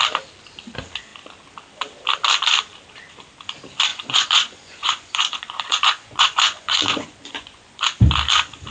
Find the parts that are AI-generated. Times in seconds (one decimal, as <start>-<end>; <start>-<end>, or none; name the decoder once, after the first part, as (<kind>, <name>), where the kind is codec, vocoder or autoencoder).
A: 3.9-7.8 (vocoder, Vocos)